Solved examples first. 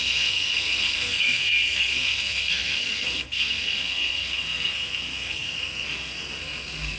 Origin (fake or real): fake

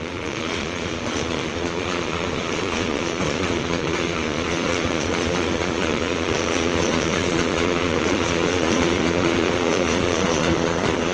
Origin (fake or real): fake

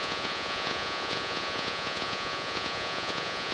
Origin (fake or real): fake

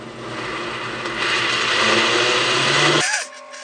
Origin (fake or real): real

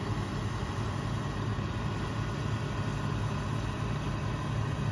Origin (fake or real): real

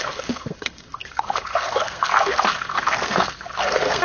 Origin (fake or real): fake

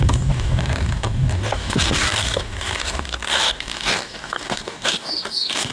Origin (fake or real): fake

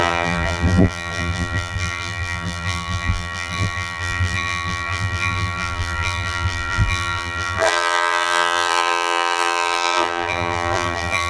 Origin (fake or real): fake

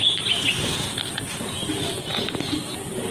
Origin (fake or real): real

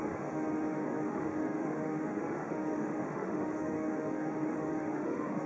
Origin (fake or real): fake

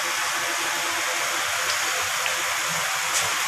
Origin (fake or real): real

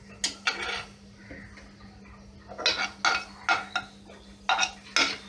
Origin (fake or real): real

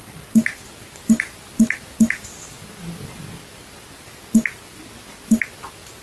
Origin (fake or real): real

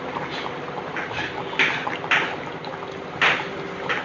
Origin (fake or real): real